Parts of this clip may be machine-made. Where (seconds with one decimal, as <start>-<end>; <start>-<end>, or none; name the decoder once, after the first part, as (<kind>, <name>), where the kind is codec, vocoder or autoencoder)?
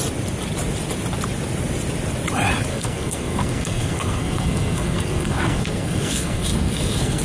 2.7-7.2 (codec, SNAC)